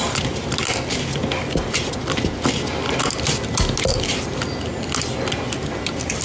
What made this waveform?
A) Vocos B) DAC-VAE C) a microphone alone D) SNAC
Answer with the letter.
C